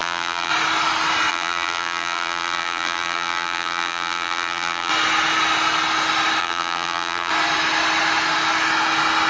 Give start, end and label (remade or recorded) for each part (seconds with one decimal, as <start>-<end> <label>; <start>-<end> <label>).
0.0-0.5 remade; 0.5-1.3 recorded; 1.3-4.9 remade; 4.9-6.4 recorded; 6.4-7.3 remade; 7.3-9.3 recorded